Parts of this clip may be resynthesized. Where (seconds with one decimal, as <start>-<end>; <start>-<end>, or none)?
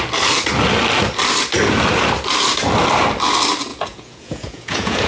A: 3.7-5.1